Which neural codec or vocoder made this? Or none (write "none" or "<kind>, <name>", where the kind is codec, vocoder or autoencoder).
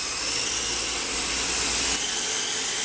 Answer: none